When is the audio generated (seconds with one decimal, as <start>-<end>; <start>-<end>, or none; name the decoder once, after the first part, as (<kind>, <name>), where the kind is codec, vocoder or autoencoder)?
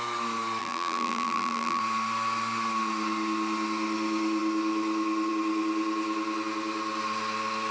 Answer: 0.6-1.8 (vocoder, BigVGAN v2)